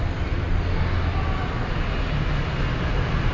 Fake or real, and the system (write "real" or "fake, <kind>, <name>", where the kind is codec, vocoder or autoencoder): real